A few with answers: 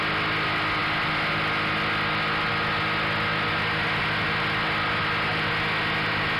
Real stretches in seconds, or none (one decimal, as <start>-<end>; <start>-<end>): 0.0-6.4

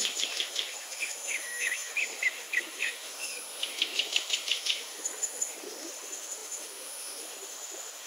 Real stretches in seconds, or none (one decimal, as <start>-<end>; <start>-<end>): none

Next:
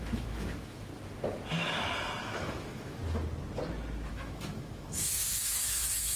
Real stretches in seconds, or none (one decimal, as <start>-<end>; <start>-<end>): 0.9-2.2; 3.0-4.1

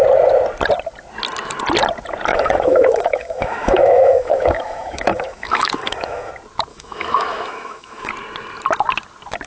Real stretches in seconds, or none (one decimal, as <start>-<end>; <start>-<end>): 0.0-2.3; 6.3-6.7; 8.1-9.5

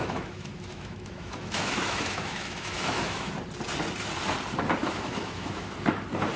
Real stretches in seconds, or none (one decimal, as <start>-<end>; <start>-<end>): 3.3-4.8; 5.7-6.4

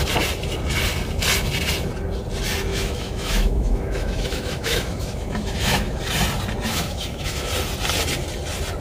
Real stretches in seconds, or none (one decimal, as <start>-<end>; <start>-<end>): 0.0-2.7; 6.0-6.7; 7.5-8.8

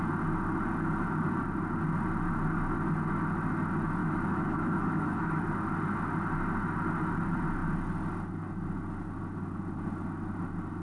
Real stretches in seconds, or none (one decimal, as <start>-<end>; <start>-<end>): 0.0-4.0; 5.4-10.8